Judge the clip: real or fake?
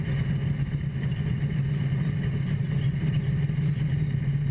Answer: real